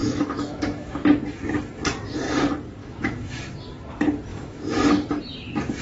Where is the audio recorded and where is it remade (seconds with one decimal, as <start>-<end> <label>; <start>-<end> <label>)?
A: 0.0-0.9 remade; 0.9-2.8 recorded; 2.8-3.4 remade; 3.4-4.3 recorded; 4.3-4.9 remade; 4.9-5.8 recorded